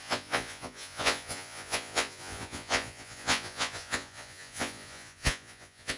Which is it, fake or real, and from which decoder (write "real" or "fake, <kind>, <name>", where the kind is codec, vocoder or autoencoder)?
fake, vocoder, Vocos